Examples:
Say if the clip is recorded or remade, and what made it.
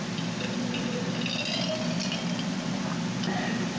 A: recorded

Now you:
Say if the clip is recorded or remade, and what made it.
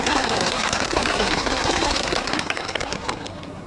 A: remade, codec, SNAC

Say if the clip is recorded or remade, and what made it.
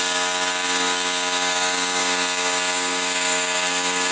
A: remade, codec, DAC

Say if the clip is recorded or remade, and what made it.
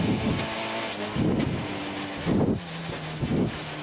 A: recorded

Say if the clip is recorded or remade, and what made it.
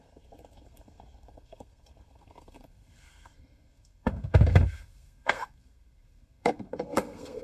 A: remade, codec, SNAC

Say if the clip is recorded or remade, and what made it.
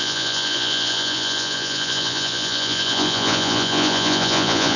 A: remade, vocoder, Vocos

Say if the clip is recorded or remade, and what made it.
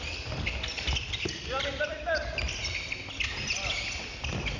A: recorded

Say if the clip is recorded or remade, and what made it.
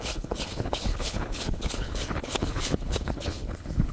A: remade, codec, HILCodec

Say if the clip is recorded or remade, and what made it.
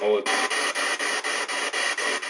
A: recorded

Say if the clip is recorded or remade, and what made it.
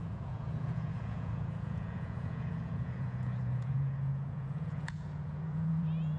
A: remade, vocoder, Vocos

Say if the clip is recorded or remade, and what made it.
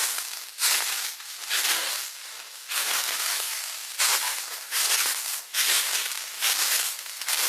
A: remade, codec, DAC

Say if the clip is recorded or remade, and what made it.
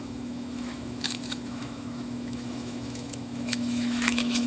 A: remade, autoencoder, DAC-VAE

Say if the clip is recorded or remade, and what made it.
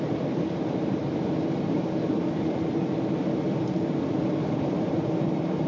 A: remade, vocoder, BigVGAN v2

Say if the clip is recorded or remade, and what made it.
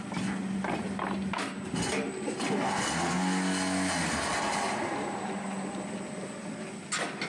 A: recorded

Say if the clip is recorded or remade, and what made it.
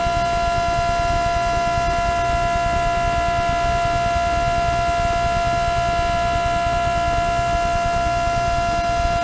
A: recorded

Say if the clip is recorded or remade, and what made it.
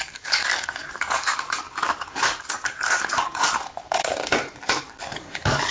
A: remade, codec, DAC